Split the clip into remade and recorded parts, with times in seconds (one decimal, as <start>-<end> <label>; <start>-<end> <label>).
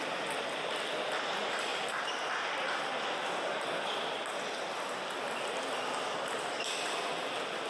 0.0-7.7 recorded